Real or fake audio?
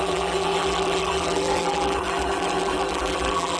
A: fake